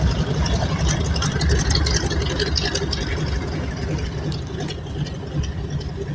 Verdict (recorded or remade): recorded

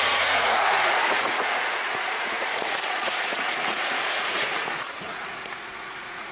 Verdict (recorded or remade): remade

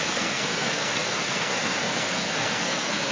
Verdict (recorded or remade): remade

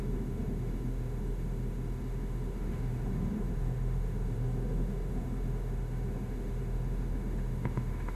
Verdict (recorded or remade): remade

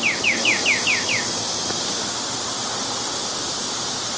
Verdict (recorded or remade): recorded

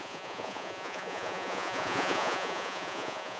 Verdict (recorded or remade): remade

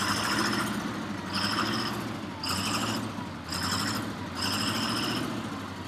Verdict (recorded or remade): recorded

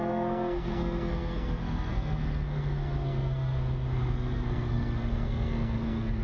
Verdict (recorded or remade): remade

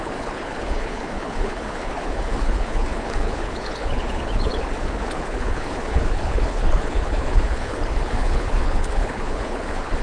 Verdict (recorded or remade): remade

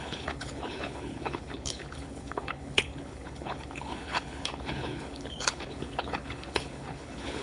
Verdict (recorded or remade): remade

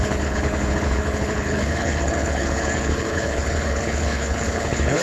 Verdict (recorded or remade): remade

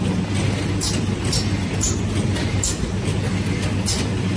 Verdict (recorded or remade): recorded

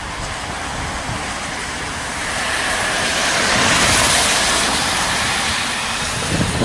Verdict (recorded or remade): remade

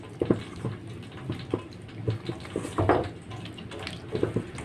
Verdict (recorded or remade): recorded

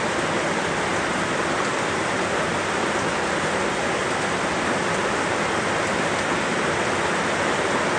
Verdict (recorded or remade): recorded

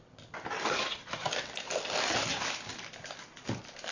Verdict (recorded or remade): recorded